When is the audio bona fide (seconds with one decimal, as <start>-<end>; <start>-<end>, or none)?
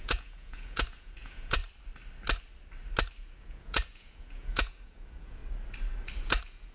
1.6-3.4; 5.4-6.2